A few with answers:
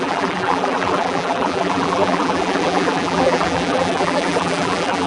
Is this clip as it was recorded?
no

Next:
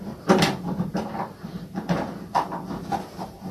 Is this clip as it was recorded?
no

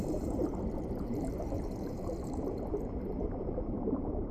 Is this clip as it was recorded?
no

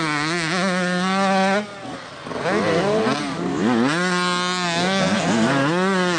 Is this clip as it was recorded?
yes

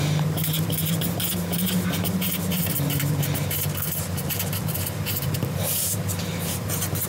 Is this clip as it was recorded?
no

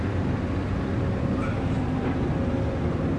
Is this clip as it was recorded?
yes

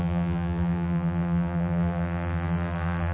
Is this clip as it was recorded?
no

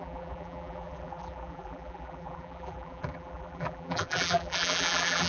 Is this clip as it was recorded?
no